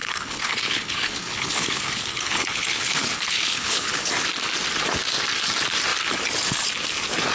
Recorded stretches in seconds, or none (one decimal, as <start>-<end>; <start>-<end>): 4.1-7.3